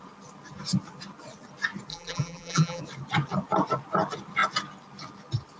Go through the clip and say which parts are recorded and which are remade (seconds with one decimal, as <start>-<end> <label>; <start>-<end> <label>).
0.0-1.9 recorded; 1.9-2.8 remade; 2.8-5.6 recorded